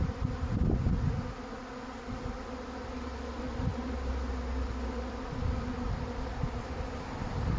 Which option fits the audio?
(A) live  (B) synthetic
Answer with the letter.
A